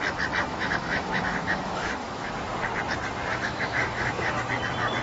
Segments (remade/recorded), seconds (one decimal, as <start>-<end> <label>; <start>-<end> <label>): 0.0-0.5 recorded; 0.5-2.3 remade; 2.3-3.3 recorded; 3.3-4.3 remade; 4.3-5.0 recorded

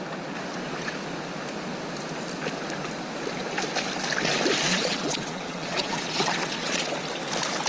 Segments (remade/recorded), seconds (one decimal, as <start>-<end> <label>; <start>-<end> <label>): 0.0-4.7 recorded; 4.7-6.9 remade; 6.9-7.7 recorded

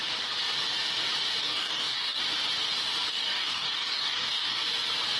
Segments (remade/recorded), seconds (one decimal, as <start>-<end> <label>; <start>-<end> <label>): 0.0-1.4 recorded; 1.4-2.2 remade; 2.2-3.1 recorded; 3.1-4.6 remade; 4.6-5.2 recorded

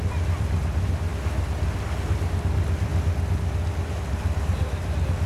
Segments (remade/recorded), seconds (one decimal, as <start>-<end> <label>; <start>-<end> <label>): 0.0-2.9 remade; 2.9-4.1 recorded; 4.1-5.3 remade

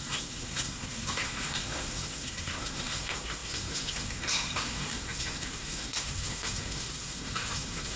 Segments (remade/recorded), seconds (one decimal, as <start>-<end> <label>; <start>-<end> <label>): 0.0-8.0 remade